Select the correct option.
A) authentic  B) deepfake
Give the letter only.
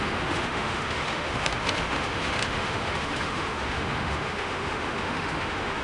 B